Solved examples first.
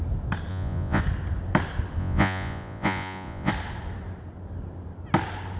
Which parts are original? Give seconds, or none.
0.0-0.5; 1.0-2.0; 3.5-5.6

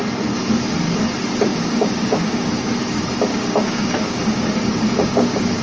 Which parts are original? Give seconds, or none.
0.0-1.5; 2.7-3.3

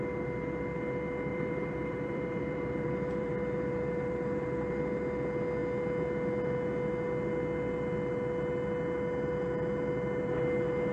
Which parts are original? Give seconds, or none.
0.0-1.3; 4.8-10.9

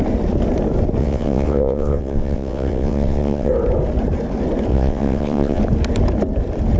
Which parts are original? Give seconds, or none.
0.0-1.0; 3.5-4.7; 5.6-6.8

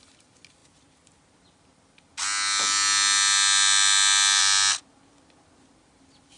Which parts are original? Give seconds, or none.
0.0-6.4

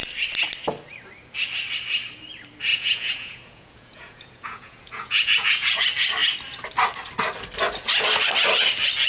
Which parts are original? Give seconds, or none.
0.0-2.7; 5.8-9.1